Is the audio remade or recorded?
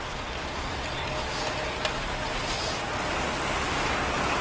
recorded